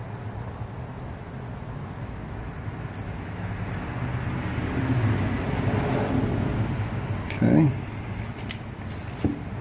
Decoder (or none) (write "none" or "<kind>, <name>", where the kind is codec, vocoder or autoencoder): none